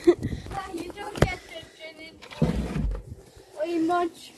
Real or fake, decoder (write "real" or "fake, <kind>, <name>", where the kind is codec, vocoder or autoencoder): real